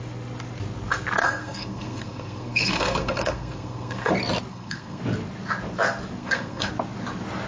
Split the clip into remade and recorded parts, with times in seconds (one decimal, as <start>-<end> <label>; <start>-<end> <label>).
0.0-1.2 recorded; 1.2-4.1 remade; 4.1-4.5 recorded; 4.5-5.0 remade; 5.0-6.2 recorded; 6.2-6.7 remade; 6.7-7.5 recorded